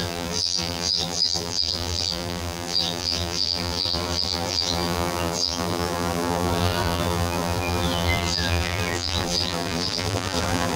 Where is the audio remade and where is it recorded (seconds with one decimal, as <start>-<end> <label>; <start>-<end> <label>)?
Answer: 0.0-10.8 remade